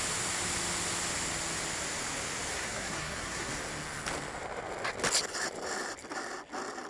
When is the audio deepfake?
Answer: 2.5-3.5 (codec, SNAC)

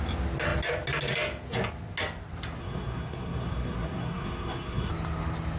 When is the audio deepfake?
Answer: 2.6-4.9 (codec, SNAC)